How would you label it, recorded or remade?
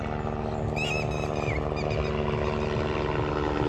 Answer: recorded